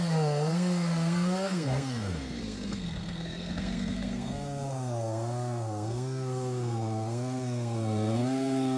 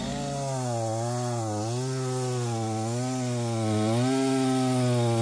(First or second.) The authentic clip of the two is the second